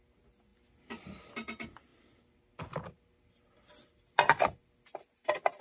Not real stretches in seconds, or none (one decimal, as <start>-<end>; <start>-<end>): none